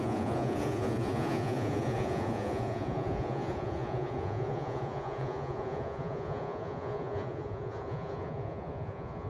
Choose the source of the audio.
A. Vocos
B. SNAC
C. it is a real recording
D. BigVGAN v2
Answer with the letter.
A